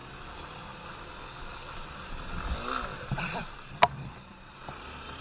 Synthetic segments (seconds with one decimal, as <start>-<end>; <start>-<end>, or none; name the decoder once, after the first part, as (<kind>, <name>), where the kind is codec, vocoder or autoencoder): 0.0-5.2 (vocoder, BigVGAN v2)